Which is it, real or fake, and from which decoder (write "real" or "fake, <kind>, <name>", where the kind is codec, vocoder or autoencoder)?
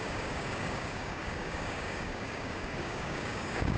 fake, codec, DAC